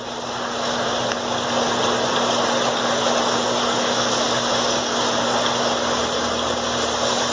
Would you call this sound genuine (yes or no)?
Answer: yes